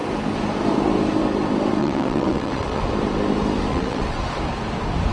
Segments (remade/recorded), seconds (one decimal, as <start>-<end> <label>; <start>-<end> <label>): 0.0-1.8 recorded; 1.8-2.8 remade; 2.8-3.7 recorded; 3.7-4.2 remade; 4.2-5.1 recorded